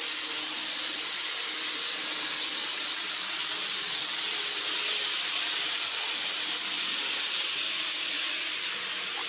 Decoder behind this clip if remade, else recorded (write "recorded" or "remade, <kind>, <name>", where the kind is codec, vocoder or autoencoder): remade, vocoder, BigVGAN v2